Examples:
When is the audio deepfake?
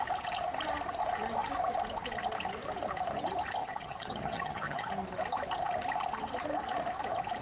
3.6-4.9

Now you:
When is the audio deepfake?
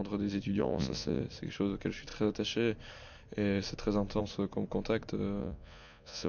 0.6-1.2; 5.4-6.3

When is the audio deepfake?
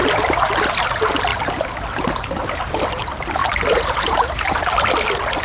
none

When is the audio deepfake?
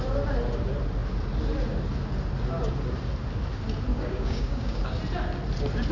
3.9-5.0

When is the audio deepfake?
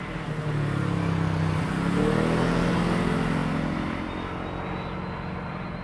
none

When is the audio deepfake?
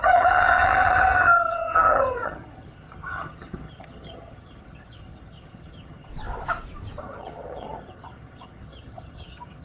0.0-6.1; 7.0-9.6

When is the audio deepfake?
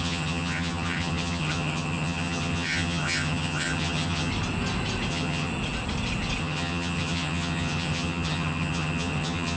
0.0-4.3; 5.1-5.5; 6.4-9.6